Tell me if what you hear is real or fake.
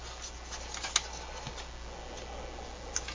real